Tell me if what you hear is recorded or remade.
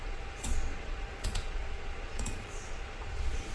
remade